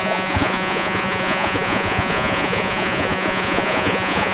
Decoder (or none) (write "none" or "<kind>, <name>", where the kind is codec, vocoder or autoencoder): vocoder, Vocos